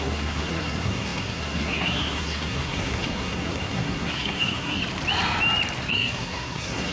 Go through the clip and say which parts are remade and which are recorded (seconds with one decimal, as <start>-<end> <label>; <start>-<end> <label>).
0.0-4.8 remade; 4.8-5.9 recorded; 5.9-6.9 remade